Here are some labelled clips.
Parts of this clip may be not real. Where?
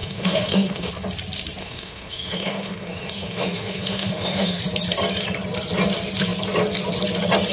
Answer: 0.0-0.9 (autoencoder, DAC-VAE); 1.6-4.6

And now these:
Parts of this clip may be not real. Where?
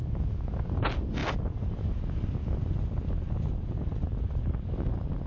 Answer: none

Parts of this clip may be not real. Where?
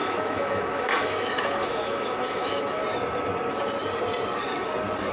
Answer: 0.0-2.8 (autoencoder, DAC-VAE)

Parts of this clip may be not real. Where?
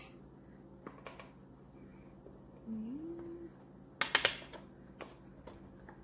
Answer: none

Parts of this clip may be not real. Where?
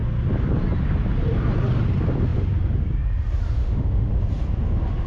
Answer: 3.6-4.1 (autoencoder, DAC-VAE)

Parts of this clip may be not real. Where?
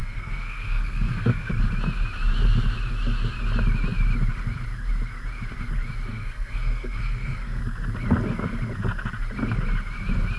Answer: 0.0-1.5 (codec, SNAC); 6.1-7.6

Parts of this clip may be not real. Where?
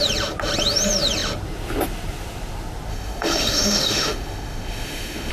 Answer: 2.9-5.3 (autoencoder, DAC-VAE)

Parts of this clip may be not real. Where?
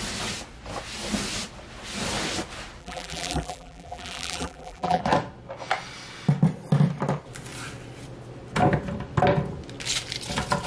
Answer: 2.8-5.0 (vocoder, BigVGAN v2)